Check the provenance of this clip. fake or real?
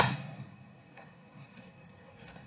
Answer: fake